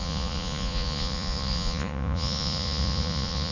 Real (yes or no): no